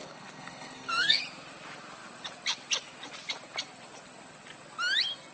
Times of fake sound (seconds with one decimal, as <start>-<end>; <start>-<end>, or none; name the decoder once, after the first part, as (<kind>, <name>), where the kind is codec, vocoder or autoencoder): 0.0-1.2 (codec, SNAC)